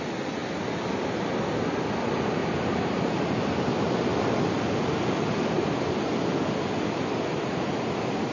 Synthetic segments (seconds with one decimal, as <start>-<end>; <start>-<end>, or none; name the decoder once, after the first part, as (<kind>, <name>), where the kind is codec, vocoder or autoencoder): none